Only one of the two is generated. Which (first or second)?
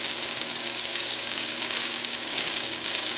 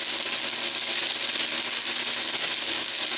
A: first